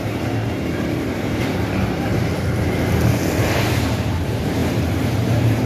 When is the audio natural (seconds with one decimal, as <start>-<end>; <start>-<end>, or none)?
2.1-3.5